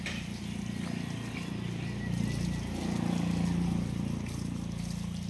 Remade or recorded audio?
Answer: recorded